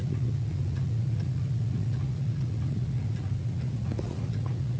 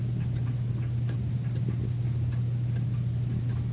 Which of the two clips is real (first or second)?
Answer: second